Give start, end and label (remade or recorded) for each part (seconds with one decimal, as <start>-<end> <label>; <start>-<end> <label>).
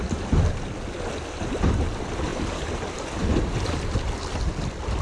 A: 0.0-5.0 recorded